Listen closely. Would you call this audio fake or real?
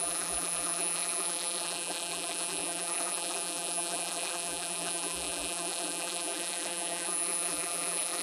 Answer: fake